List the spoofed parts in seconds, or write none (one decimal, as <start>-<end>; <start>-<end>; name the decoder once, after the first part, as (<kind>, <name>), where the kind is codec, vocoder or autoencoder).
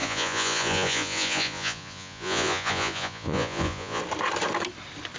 0.0-4.0 (vocoder, Vocos)